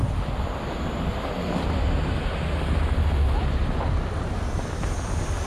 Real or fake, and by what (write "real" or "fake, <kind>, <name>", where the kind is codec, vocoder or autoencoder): real